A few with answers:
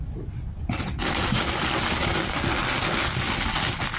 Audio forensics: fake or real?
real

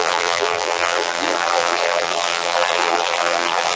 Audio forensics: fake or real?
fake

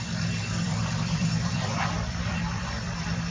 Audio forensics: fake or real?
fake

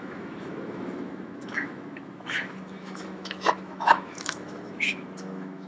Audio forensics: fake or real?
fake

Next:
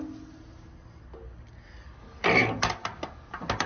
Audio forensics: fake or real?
real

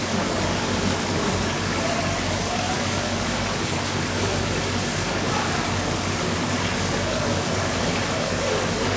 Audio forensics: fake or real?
fake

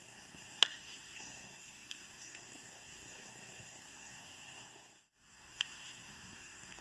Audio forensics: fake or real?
fake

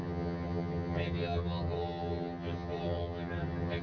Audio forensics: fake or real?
fake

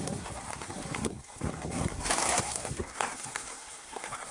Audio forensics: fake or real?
fake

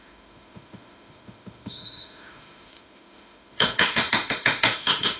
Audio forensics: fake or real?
fake